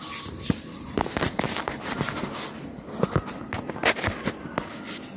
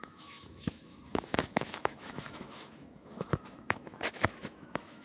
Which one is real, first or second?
first